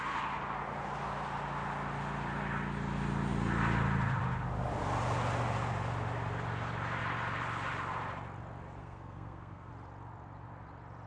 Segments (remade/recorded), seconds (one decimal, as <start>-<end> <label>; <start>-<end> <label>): 0.0-8.8 recorded; 8.8-9.7 remade; 9.7-11.1 recorded